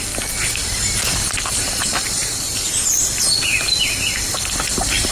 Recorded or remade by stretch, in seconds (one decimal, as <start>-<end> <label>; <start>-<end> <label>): 0.0-2.2 recorded; 2.2-2.9 remade; 2.9-5.1 recorded